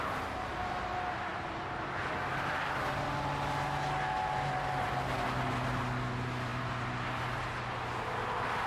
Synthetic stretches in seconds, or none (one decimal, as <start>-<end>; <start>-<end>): none